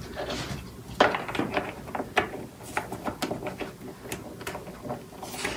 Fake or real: real